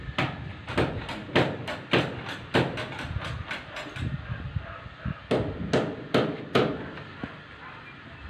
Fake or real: real